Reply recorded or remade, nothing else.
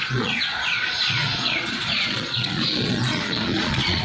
remade